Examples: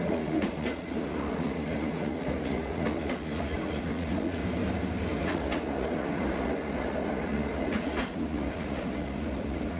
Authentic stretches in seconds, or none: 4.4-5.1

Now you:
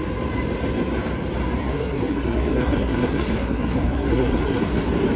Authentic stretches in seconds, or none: 0.0-1.6; 4.6-5.2

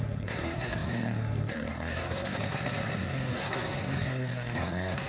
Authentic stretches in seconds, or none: none